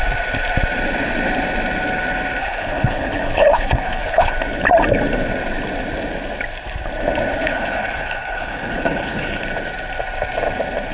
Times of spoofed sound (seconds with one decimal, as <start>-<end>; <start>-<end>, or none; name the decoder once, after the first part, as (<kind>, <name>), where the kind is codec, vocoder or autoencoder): 2.4-4.3 (codec, HILCodec); 7.3-9.4